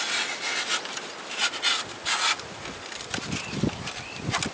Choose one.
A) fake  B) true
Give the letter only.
B